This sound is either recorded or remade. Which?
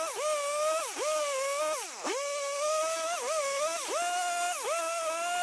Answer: recorded